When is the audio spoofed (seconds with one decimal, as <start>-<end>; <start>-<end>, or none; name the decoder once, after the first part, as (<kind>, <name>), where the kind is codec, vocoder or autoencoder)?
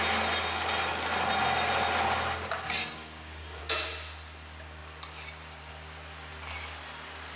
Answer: 2.8-3.6 (codec, DAC)